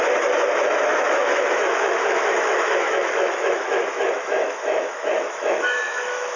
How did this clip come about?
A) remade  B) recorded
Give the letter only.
A